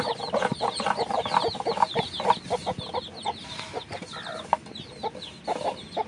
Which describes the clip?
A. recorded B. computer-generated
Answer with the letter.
A